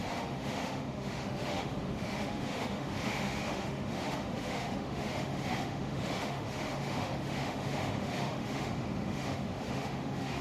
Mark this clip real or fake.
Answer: fake